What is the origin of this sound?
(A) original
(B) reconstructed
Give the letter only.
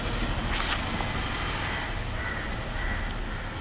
A